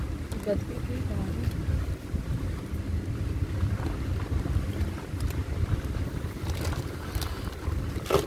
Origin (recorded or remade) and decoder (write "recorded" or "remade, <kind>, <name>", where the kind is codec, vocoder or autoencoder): recorded